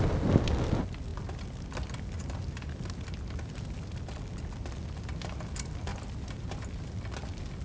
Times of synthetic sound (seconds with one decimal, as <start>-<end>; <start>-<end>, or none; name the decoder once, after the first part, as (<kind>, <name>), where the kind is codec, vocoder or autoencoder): none